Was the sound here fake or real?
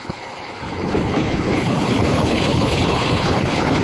fake